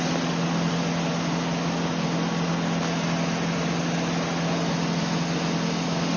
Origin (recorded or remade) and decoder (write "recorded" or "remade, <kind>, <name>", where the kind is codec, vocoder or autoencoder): recorded